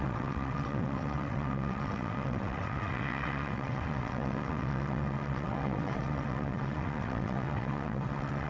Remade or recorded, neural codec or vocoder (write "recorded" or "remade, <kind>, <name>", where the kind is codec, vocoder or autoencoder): remade, vocoder, WaveNeXt